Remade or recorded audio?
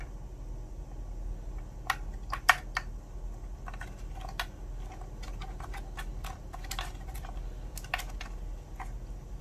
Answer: recorded